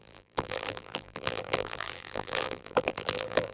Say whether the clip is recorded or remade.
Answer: remade